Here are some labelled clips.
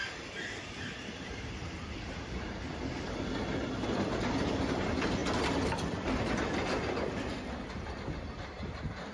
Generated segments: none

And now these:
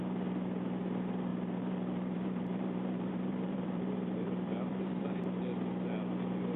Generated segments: 1.3-5.2 (vocoder, BigVGAN v2)

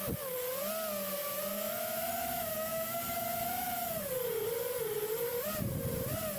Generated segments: 1.2-4.0 (autoencoder, DAC-VAE)

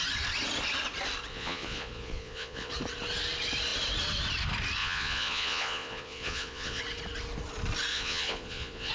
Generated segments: 1.3-2.7 (vocoder, Vocos); 4.8-6.8; 7.9-8.9

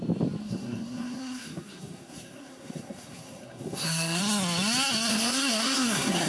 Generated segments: 0.4-4.2 (codec, SNAC); 5.1-6.3

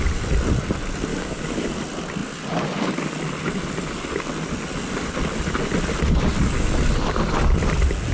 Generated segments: 1.1-1.8 (codec, DAC)